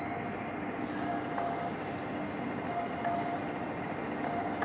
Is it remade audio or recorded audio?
recorded